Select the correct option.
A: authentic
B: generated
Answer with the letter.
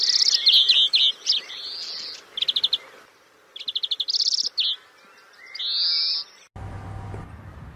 A